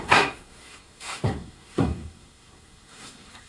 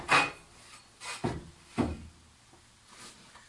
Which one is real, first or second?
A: second